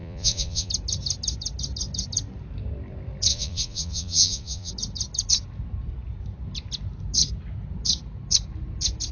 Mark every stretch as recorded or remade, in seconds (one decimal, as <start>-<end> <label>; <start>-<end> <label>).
0.0-0.7 remade; 0.7-3.3 recorded; 3.3-4.7 remade; 4.7-9.1 recorded